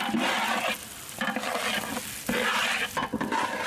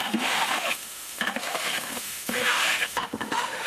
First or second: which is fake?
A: second